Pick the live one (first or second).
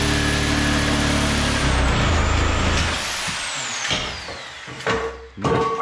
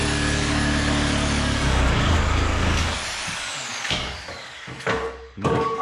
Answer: first